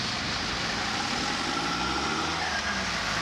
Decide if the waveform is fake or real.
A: real